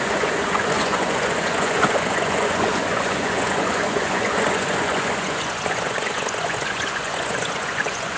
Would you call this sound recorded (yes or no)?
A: no